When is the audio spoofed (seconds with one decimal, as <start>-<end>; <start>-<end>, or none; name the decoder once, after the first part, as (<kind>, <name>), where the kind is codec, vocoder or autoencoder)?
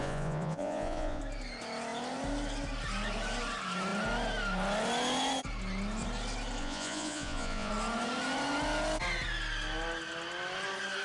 0.0-1.2 (vocoder, Vocos); 6.6-7.7